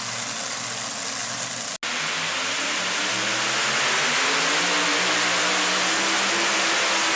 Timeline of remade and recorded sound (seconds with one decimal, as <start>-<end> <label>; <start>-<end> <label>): 0.0-7.2 recorded